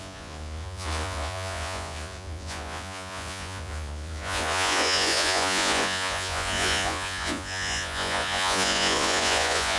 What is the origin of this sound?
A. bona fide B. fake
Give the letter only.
B